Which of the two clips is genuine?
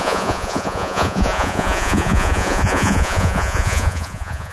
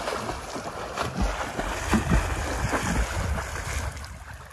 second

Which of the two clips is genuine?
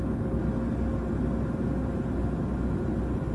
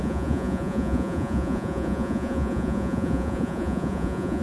first